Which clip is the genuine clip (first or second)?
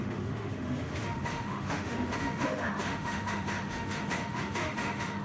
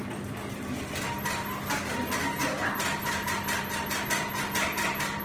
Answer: second